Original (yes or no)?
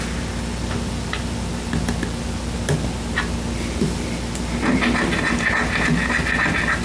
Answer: yes